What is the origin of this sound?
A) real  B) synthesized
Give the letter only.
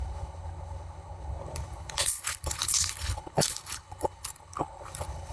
B